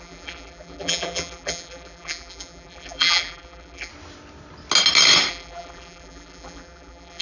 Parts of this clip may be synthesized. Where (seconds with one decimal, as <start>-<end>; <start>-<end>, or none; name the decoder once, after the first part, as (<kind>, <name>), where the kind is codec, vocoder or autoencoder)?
0.0-3.9 (vocoder, BigVGAN v2); 5.3-7.2